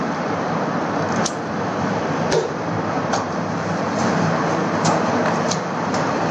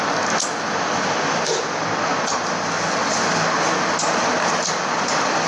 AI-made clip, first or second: first